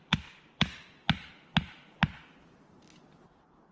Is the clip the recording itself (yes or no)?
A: yes